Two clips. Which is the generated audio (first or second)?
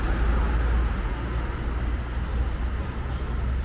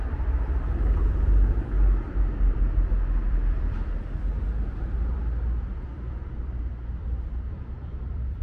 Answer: second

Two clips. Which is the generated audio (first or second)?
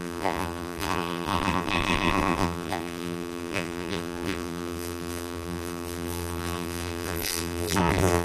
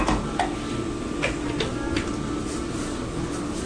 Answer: first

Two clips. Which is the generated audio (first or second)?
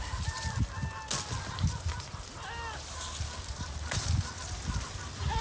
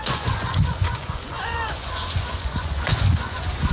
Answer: second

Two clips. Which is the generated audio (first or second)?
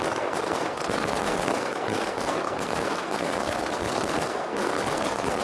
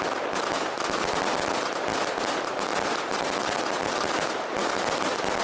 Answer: first